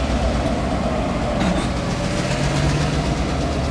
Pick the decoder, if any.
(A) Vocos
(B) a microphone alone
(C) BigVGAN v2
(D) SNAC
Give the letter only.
B